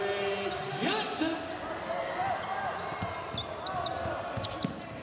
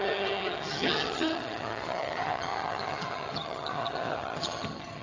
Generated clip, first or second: second